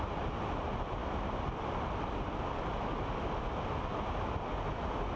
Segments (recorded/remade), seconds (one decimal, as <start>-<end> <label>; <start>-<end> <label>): 0.0-5.2 recorded

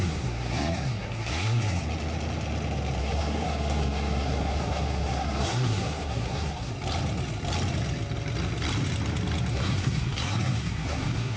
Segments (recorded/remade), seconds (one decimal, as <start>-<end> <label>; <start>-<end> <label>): 0.0-1.8 remade; 1.8-3.0 recorded; 3.0-6.7 remade; 6.7-9.5 recorded; 9.5-11.4 remade

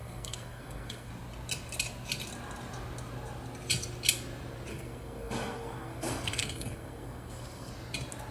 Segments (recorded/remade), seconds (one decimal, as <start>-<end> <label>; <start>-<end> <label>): 0.0-1.1 remade; 1.1-4.7 recorded; 4.7-7.7 remade; 7.7-8.3 recorded

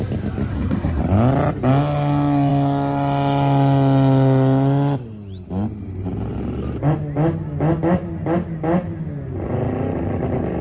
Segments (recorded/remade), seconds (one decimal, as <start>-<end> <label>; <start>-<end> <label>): 0.0-0.5 recorded; 0.5-1.0 remade; 1.0-10.6 recorded

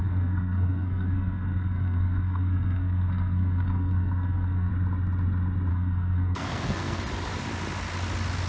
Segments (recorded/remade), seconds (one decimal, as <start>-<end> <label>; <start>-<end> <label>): 0.0-4.7 remade; 4.7-5.7 recorded; 5.7-7.0 remade; 7.0-8.5 recorded

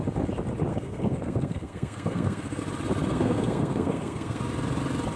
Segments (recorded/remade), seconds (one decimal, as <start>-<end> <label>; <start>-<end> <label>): 0.0-0.7 recorded; 0.7-2.6 remade; 2.6-3.1 recorded; 3.1-4.4 remade; 4.4-5.2 recorded

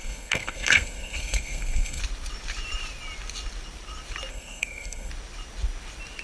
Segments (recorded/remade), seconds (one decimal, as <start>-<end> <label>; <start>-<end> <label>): 0.0-2.0 remade; 2.0-4.3 recorded; 4.3-5.1 remade; 5.1-6.2 recorded